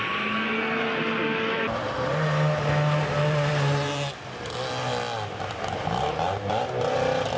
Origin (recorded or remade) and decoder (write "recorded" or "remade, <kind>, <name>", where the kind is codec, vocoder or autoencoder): recorded